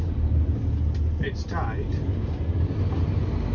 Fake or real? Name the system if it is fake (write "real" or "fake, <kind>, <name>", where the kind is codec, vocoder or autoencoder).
real